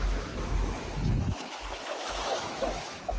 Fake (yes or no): yes